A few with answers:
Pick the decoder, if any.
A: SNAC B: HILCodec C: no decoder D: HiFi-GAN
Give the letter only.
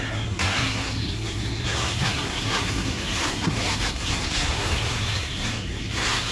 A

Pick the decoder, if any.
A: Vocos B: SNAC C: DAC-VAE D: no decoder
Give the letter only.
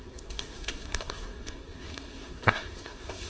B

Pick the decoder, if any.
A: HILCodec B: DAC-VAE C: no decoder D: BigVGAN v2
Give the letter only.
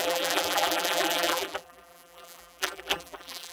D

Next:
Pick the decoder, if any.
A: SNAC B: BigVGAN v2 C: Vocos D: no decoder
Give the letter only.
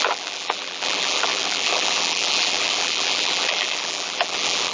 B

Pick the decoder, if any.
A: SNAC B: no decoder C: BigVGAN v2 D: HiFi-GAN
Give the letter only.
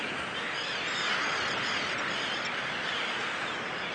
B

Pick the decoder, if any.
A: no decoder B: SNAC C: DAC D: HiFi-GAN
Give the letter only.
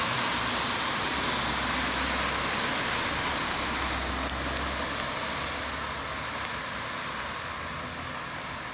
A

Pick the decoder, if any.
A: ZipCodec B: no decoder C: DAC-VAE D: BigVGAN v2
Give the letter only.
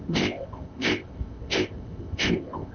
A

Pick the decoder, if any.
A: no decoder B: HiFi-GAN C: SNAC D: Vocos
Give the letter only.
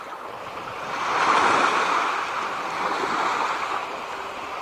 A